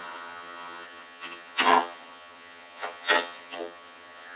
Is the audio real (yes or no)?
no